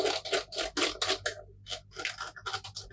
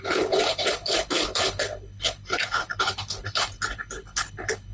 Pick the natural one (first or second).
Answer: first